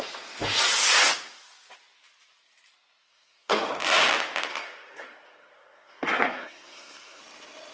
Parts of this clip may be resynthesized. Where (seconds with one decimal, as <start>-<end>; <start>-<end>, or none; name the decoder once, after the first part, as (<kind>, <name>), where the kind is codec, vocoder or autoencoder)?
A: 3.0-3.7 (codec, SNAC); 4.5-7.2